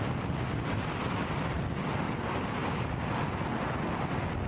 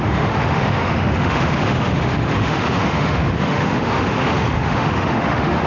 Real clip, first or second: first